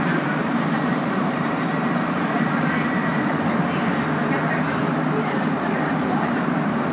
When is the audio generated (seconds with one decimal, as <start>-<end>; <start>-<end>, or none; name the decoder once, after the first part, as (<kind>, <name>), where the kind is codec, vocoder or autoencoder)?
0.0-6.9 (vocoder, BigVGAN v2)